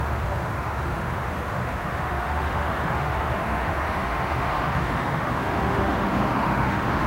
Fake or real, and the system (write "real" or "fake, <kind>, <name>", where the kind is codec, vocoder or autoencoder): fake, autoencoder, DAC-VAE